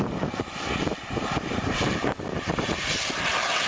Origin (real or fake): fake